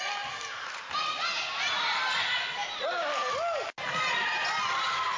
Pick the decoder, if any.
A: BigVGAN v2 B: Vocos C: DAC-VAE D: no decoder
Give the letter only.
D